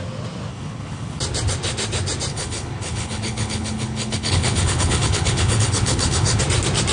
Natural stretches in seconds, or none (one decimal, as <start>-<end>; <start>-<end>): 0.0-0.5; 1.2-2.3; 6.4-6.9